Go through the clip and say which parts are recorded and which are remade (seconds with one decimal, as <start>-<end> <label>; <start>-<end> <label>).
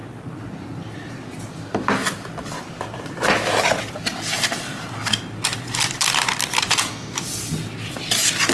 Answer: 0.0-8.5 recorded